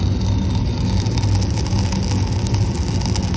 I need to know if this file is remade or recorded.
recorded